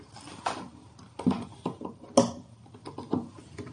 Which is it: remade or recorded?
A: recorded